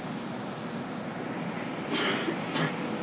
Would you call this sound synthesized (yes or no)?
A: no